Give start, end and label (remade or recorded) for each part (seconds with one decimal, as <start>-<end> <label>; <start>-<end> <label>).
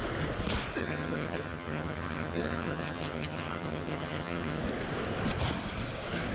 0.0-0.8 recorded; 0.8-4.6 remade; 4.6-6.3 recorded